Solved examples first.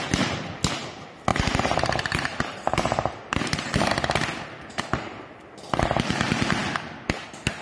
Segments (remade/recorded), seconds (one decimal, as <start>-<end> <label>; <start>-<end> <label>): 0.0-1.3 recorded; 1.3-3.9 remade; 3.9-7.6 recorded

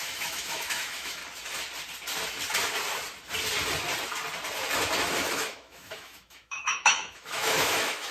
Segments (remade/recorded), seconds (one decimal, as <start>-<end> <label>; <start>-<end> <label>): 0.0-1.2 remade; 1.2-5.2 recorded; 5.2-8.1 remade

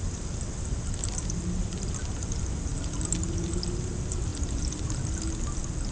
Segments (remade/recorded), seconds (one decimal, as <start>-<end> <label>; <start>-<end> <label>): 0.0-5.9 recorded

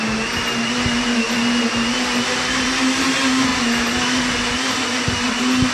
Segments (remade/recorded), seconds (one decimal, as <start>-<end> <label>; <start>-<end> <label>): 0.0-5.7 recorded